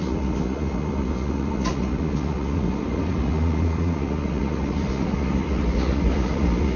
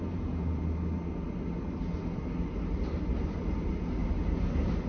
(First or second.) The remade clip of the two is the first